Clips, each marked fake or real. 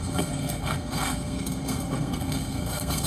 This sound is fake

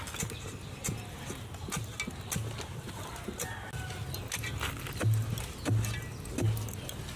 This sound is real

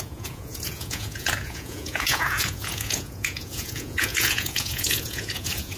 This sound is fake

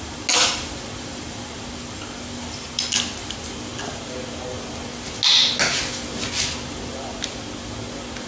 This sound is real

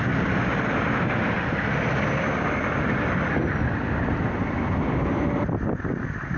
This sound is real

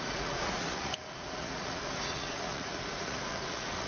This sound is fake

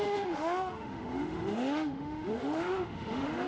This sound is fake